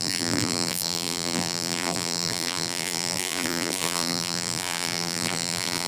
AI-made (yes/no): yes